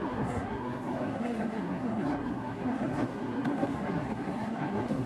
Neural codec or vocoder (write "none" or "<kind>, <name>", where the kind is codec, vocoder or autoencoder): codec, SNAC